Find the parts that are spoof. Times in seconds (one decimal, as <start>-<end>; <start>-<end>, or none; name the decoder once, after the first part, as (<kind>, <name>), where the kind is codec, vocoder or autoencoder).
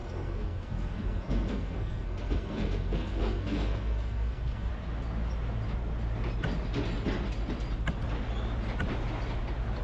0.0-4.7 (codec, SNAC)